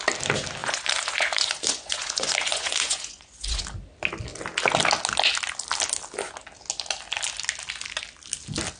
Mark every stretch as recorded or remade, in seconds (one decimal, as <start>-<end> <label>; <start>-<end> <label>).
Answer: 0.0-0.6 recorded; 0.6-3.6 remade; 3.6-8.8 recorded